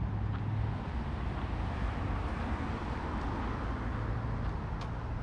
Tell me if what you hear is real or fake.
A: real